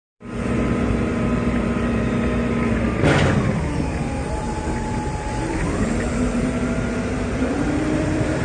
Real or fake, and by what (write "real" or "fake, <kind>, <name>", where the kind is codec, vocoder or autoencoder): fake, vocoder, BigVGAN v2